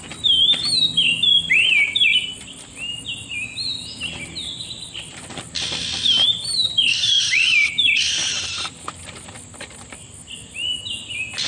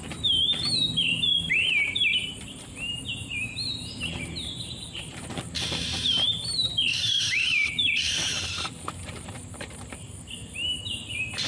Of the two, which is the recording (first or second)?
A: first